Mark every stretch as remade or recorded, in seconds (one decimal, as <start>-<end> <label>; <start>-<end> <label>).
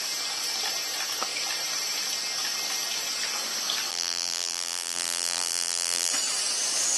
0.0-3.9 recorded; 3.9-6.1 remade; 6.1-7.0 recorded